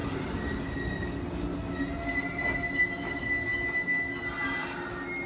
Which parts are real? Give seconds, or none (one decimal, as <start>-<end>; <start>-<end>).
0.0-5.3